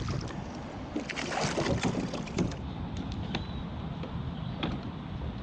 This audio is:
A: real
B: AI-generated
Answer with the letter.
A